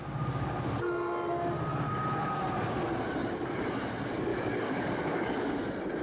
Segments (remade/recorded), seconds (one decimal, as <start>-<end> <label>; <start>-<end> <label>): 0.0-4.3 recorded; 4.3-5.6 remade; 5.6-6.0 recorded

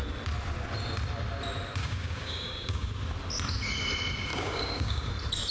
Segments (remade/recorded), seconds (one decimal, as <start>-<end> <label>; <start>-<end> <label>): 0.0-1.8 recorded; 1.8-2.9 remade; 2.9-4.3 recorded; 4.3-5.1 remade; 5.1-5.5 recorded

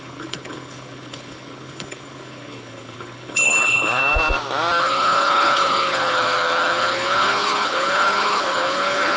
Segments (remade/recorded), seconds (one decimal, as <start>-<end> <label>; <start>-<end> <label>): 0.0-4.0 remade; 4.0-4.8 recorded; 4.8-9.2 remade

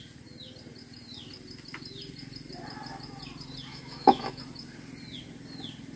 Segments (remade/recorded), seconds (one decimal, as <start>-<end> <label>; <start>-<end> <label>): 0.0-3.7 recorded; 3.7-4.4 remade; 4.4-6.0 recorded

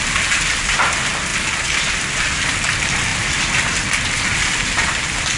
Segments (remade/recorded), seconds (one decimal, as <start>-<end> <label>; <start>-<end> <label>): 0.0-1.3 remade; 1.3-1.9 recorded; 1.9-5.4 remade